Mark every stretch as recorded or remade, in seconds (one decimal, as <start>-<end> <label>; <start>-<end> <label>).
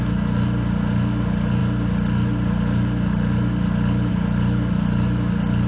0.0-5.7 recorded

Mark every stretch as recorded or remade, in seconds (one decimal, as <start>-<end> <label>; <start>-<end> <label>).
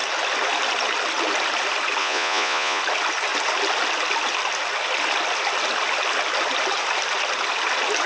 0.0-2.0 recorded; 2.0-2.8 remade; 2.8-8.1 recorded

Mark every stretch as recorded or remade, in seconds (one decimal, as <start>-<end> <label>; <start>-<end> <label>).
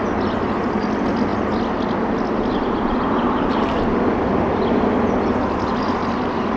0.0-6.6 recorded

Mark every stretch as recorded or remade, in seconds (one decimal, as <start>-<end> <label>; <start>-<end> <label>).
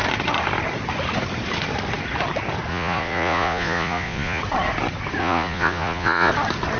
0.0-2.7 recorded; 2.7-4.4 remade; 4.4-5.2 recorded; 5.2-6.3 remade; 6.3-6.8 recorded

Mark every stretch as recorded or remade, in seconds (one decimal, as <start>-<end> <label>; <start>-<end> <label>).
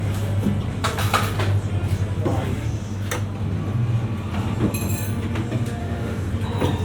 0.0-5.8 recorded; 5.8-6.3 remade; 6.3-6.8 recorded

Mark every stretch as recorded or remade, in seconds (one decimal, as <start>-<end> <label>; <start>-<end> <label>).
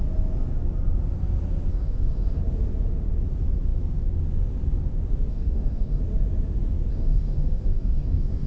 0.0-1.7 recorded; 1.7-2.4 remade; 2.4-5.3 recorded; 5.3-6.0 remade; 6.0-6.9 recorded; 6.9-8.5 remade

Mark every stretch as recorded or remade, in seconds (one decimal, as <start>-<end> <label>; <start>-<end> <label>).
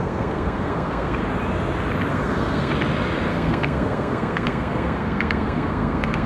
0.0-1.2 remade; 1.2-2.1 recorded; 2.1-2.7 remade; 2.7-3.3 recorded; 3.3-6.3 remade